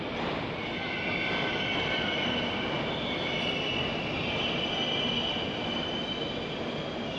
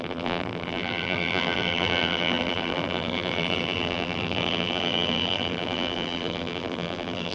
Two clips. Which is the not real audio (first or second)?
second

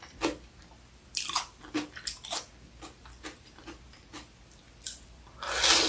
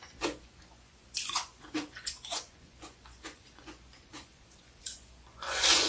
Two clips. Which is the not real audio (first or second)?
second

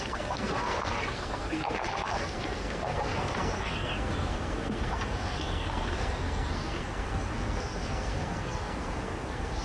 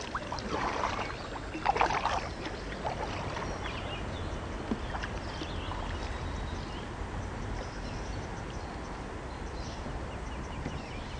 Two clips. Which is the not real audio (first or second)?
first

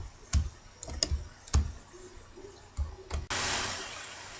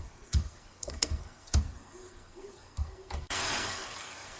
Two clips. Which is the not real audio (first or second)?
second